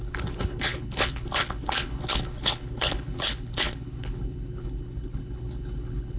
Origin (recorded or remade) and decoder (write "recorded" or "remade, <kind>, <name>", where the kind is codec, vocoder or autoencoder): remade, codec, HILCodec